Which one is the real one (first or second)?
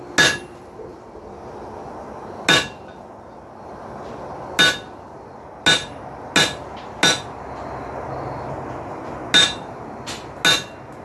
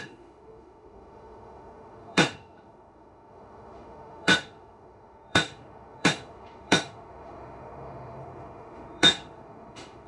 first